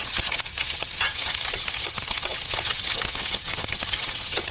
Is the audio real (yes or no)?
no